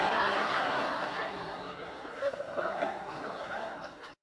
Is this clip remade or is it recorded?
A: remade